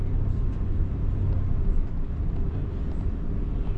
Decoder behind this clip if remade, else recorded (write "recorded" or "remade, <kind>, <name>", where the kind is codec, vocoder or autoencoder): recorded